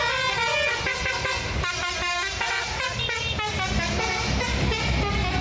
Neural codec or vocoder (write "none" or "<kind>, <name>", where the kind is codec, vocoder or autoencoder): none